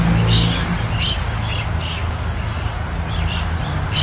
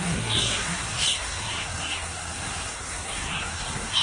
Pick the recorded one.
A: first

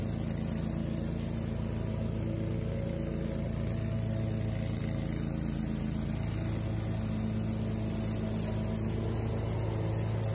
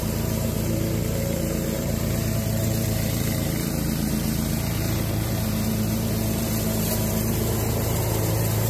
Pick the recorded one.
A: first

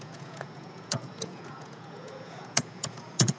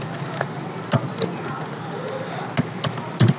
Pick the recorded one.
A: second